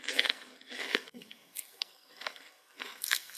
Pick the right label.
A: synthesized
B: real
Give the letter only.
A